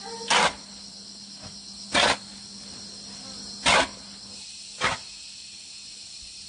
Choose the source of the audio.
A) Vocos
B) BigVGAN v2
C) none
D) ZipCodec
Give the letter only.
C